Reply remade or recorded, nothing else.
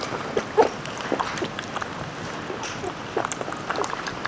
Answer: recorded